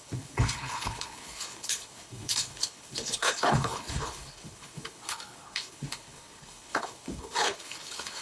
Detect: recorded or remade remade